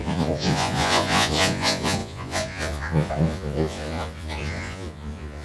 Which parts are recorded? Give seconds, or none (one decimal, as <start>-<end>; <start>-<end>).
none